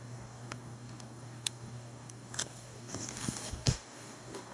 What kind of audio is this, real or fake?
fake